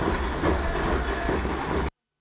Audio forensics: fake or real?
real